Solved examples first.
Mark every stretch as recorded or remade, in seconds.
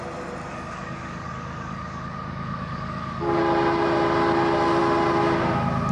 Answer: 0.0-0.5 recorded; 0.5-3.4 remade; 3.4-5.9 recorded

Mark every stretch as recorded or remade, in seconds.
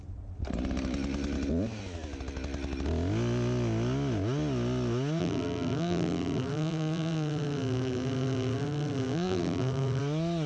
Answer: 0.0-5.2 recorded; 5.2-10.0 remade; 10.0-10.5 recorded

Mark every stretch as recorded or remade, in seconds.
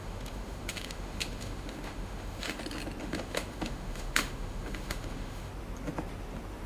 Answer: 0.0-2.6 remade; 2.6-3.0 recorded; 3.0-5.5 remade; 5.5-6.7 recorded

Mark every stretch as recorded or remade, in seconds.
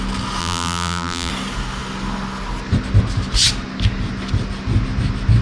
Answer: 0.0-0.4 recorded; 0.4-1.3 remade; 1.3-5.4 recorded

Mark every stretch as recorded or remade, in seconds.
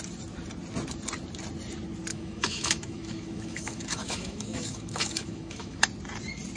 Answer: 0.0-2.1 recorded; 2.1-5.8 remade; 5.8-6.6 recorded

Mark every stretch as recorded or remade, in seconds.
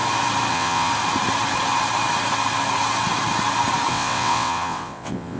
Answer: 0.0-0.5 recorded; 0.5-0.9 remade; 0.9-3.9 recorded; 3.9-5.4 remade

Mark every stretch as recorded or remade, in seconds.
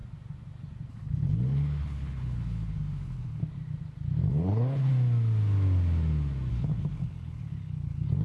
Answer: 0.0-0.9 recorded; 0.9-3.4 remade; 3.4-4.3 recorded; 4.3-4.9 remade; 4.9-6.5 recorded; 6.5-8.2 remade